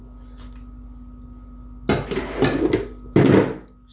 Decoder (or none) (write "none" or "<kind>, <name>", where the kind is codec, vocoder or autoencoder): none